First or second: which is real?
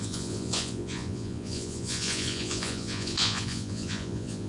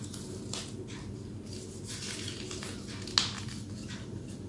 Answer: second